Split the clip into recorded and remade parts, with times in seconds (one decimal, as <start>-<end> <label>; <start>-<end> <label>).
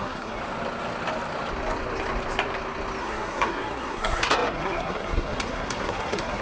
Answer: 0.0-0.4 remade; 0.4-3.0 recorded; 3.0-6.4 remade